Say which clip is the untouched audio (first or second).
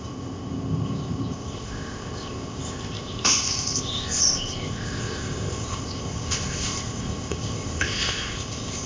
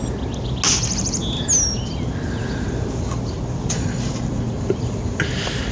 second